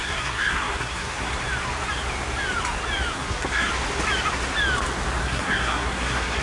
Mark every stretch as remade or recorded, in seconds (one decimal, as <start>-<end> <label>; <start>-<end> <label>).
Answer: 0.0-1.4 remade; 1.4-3.1 recorded; 3.1-3.7 remade; 3.7-5.2 recorded; 5.2-6.4 remade